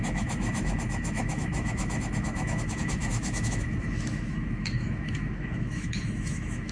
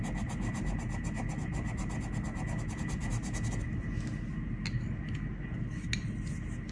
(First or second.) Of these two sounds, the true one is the second